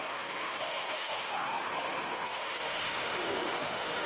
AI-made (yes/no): yes